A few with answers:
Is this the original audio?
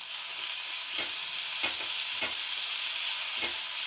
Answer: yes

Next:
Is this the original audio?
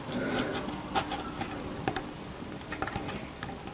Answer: yes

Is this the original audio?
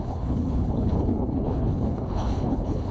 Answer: no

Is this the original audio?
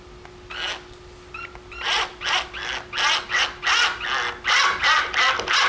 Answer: yes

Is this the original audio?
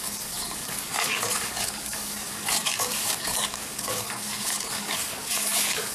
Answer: no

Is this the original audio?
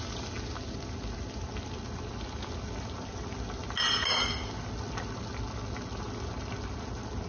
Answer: yes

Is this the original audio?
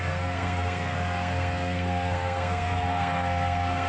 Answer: no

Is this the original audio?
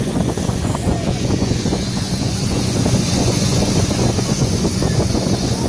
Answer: no